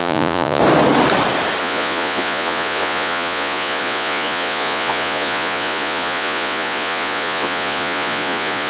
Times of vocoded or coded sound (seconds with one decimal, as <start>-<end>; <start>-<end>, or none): 0.0-0.6; 1.6-8.7